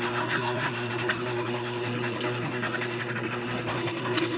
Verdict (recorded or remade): remade